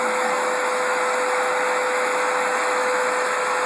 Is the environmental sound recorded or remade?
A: remade